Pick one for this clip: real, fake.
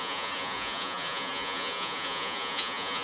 fake